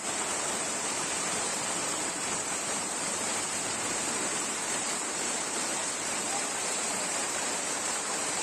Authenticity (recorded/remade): remade